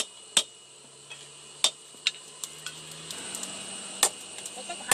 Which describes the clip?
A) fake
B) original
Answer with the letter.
B